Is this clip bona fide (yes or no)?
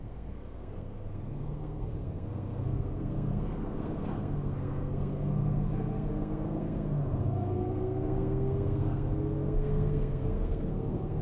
no